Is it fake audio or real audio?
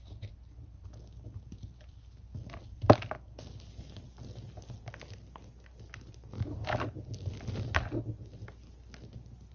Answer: real